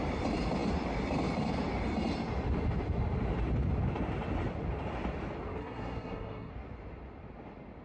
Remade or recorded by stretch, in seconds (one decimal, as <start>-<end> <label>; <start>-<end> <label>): 0.0-5.6 recorded; 5.6-6.5 remade; 6.5-7.8 recorded